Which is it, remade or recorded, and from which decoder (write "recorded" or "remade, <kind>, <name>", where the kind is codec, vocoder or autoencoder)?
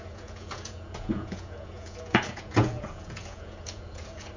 remade, vocoder, Vocos